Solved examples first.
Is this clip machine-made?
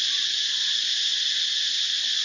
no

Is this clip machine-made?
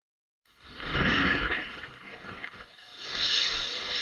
yes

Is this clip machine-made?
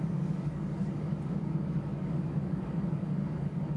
yes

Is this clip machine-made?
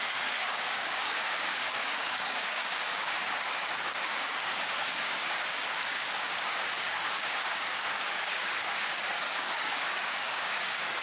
yes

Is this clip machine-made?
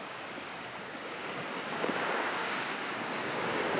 yes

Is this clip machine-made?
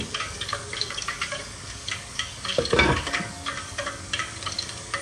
yes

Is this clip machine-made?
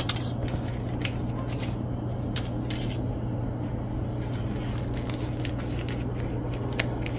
no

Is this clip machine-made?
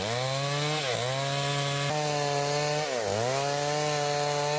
no